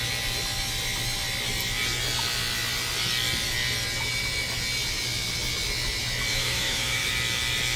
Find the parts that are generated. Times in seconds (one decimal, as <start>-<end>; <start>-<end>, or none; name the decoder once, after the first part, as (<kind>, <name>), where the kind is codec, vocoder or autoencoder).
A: 6.3-7.1 (autoencoder, DAC-VAE)